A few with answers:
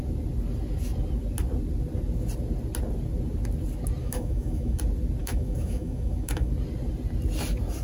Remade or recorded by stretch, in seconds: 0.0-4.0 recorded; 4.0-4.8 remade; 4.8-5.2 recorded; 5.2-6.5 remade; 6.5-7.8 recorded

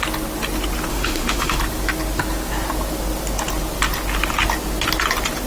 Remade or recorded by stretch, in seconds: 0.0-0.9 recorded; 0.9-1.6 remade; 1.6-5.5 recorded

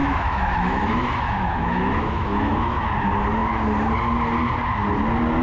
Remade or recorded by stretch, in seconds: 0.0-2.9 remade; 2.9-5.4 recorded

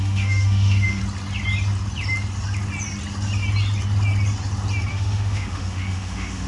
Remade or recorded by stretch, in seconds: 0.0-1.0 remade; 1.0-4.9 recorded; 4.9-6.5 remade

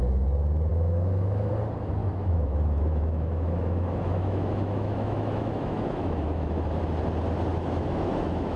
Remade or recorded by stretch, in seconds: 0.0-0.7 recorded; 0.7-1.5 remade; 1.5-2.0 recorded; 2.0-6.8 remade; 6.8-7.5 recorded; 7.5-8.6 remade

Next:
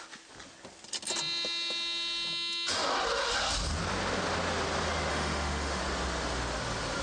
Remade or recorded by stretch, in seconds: 0.0-5.1 recorded; 5.1-5.8 remade; 5.8-7.0 recorded

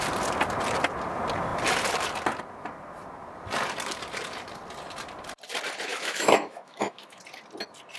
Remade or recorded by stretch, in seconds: 0.0-5.9 recorded; 5.9-7.2 remade; 7.2-8.0 recorded